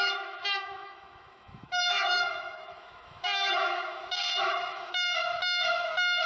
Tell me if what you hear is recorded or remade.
remade